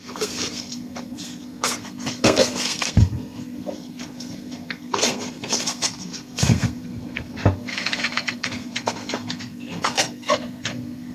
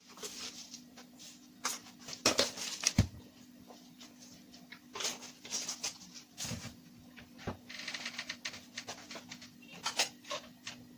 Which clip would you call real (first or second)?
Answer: second